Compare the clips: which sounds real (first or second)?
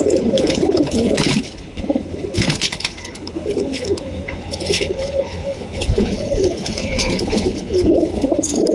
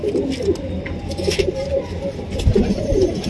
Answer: second